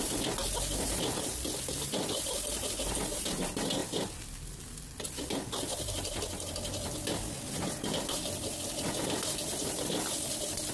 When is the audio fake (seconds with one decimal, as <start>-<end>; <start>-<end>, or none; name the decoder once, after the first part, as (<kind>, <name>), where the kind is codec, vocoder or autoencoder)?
none